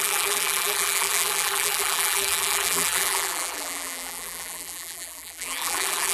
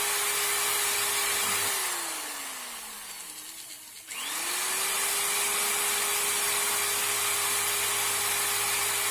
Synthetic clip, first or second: first